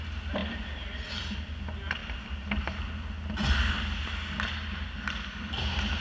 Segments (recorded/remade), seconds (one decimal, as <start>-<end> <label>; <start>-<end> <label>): 0.0-0.4 recorded; 0.4-1.5 remade; 1.5-6.0 recorded